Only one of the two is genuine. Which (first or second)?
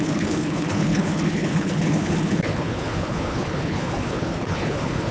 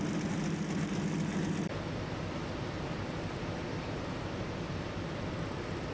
second